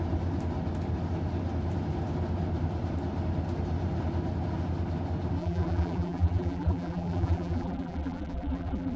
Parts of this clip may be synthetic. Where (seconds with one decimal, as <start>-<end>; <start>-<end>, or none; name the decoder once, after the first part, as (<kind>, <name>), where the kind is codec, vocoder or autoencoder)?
5.4-9.0 (vocoder, BigVGAN v2)